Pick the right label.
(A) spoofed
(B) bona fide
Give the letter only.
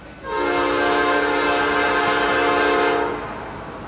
B